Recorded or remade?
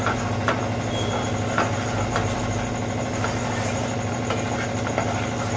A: recorded